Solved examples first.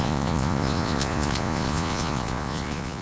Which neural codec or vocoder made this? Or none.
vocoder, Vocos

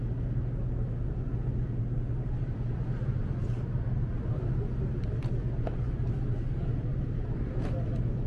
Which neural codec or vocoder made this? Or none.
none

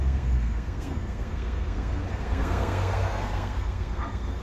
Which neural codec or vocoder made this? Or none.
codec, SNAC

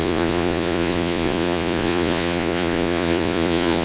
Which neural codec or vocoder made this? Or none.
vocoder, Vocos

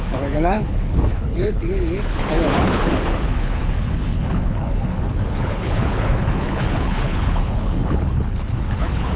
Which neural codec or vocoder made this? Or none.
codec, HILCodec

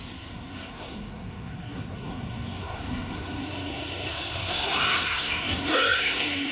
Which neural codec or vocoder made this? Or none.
codec, SNAC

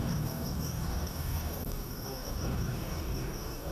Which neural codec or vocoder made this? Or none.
codec, DAC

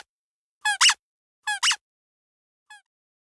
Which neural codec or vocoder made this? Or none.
none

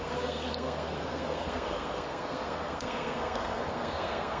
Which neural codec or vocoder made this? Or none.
codec, SNAC